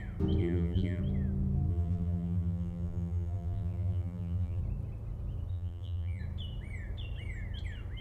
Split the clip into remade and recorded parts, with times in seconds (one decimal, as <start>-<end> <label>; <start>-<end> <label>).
0.0-0.4 recorded; 0.4-1.0 remade; 1.0-1.7 recorded; 1.7-4.6 remade; 4.6-5.5 recorded; 5.5-6.2 remade; 6.2-8.0 recorded